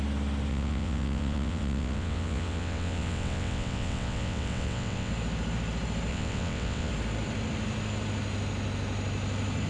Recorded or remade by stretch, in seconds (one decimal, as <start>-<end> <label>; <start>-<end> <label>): 0.0-0.5 recorded; 0.5-5.1 remade; 5.1-6.1 recorded; 6.1-6.9 remade; 6.9-9.7 recorded